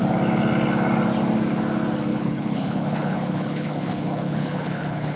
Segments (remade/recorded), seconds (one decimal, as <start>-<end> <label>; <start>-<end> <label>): 0.0-2.1 recorded; 2.1-5.2 remade